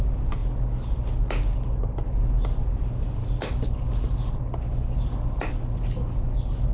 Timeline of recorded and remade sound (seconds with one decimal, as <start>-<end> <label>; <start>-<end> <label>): 0.0-6.7 recorded